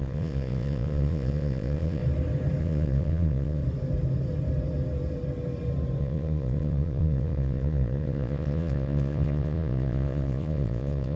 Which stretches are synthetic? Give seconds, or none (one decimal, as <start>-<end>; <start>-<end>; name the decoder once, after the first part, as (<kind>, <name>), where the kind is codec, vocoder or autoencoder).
0.0-2.0 (vocoder, Vocos); 2.6-3.6; 6.0-11.2